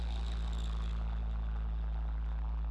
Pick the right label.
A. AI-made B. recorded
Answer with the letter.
B